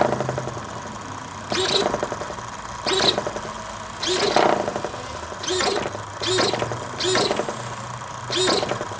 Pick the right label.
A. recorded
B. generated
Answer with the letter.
A